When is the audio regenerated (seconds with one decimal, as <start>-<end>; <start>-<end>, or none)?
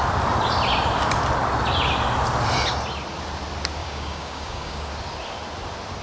3.8-4.9